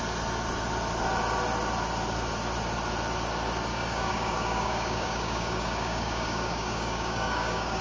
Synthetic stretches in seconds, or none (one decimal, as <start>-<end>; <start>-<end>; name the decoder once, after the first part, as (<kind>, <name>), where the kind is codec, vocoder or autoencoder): 3.7-7.8 (codec, DAC)